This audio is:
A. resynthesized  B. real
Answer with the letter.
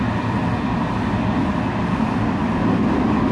B